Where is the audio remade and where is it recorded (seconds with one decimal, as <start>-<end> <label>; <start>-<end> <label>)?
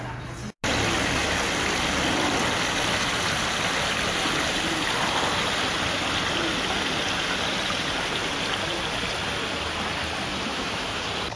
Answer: 0.0-10.5 recorded; 10.5-11.0 remade; 11.0-11.4 recorded